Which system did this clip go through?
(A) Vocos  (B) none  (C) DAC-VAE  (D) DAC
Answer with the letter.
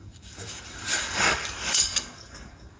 D